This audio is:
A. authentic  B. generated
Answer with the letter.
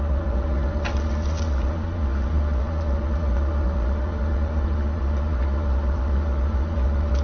B